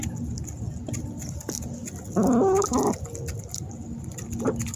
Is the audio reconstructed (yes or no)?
no